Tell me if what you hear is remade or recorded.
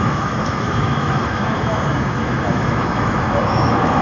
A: remade